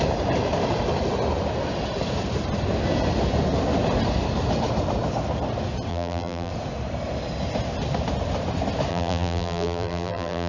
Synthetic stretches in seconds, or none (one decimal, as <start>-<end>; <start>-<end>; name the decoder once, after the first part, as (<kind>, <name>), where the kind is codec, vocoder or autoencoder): 5.9-6.5 (vocoder, BigVGAN v2); 8.9-10.5